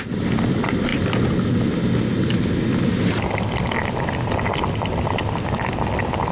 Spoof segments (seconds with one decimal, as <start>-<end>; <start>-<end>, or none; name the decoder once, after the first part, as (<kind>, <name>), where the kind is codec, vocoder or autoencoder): none